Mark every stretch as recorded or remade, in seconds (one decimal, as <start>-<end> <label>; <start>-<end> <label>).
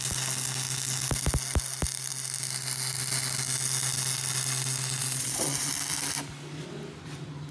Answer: 0.0-5.0 recorded; 5.0-5.7 remade; 5.7-7.5 recorded